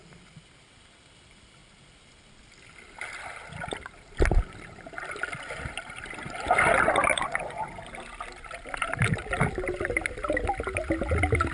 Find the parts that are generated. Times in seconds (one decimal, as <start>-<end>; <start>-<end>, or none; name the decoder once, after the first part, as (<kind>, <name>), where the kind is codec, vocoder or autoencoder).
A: 7.1-7.7 (vocoder, Vocos)